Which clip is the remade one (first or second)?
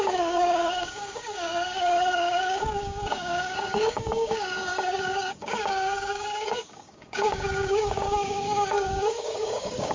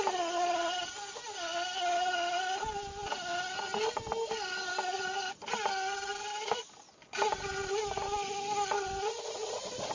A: first